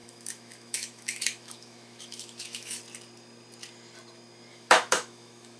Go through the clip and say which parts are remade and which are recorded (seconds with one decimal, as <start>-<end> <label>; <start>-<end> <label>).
0.0-2.8 remade; 2.8-4.5 recorded; 4.5-5.6 remade